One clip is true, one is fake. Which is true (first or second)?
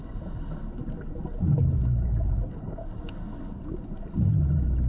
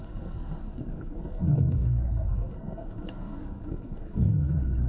first